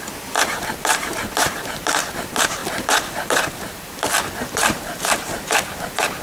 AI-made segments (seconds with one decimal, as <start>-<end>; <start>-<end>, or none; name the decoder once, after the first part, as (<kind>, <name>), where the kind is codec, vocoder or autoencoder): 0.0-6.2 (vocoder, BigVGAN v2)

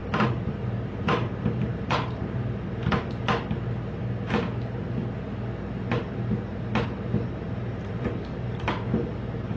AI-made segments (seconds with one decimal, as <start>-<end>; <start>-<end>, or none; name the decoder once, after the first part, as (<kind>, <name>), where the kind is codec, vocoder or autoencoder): 0.0-3.1 (vocoder, BigVGAN v2); 7.7-9.1

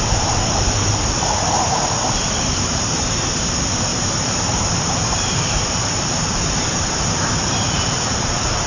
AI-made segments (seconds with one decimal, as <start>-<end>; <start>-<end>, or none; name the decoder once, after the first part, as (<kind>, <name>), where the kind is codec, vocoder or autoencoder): 0.0-8.7 (vocoder, BigVGAN v2)